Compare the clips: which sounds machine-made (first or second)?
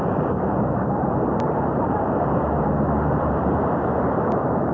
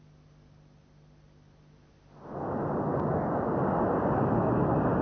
first